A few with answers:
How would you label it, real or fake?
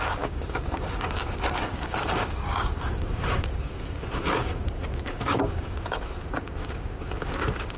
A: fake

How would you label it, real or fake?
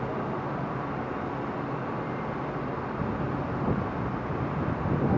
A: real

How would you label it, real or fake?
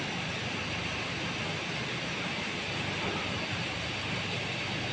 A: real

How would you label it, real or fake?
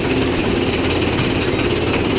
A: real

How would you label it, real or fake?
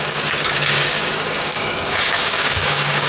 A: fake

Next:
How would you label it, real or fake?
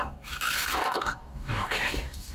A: fake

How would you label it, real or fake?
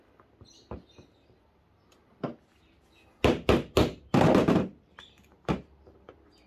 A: real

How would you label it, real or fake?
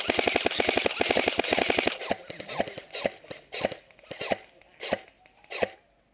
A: real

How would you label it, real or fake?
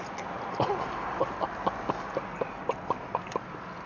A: real